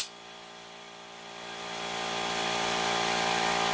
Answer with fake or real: real